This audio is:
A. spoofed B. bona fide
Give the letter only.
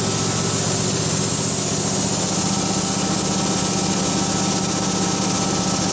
B